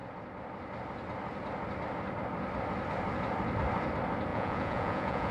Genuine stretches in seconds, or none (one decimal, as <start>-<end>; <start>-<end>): 0.0-4.3